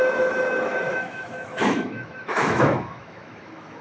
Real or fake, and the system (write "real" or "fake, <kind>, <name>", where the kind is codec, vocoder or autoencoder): fake, autoencoder, DAC-VAE